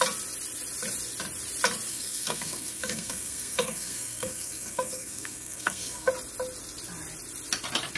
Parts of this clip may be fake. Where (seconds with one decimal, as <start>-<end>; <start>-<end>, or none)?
1.9-6.1